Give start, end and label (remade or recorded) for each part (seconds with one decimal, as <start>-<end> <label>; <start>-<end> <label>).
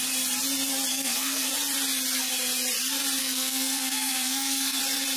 0.0-0.9 recorded; 0.9-1.5 remade; 1.5-3.2 recorded; 3.2-4.8 remade; 4.8-5.2 recorded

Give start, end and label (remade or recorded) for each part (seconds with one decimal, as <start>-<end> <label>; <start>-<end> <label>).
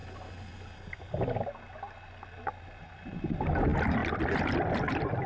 0.0-2.7 recorded; 2.7-4.0 remade; 4.0-5.3 recorded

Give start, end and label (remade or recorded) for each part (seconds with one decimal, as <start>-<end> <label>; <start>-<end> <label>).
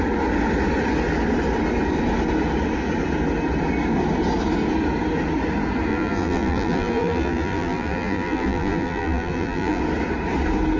0.0-5.9 recorded; 5.9-9.8 remade; 9.8-10.8 recorded